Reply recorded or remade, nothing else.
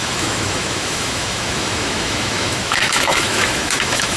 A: remade